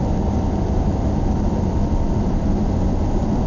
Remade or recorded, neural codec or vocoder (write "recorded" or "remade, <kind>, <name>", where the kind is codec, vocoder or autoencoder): recorded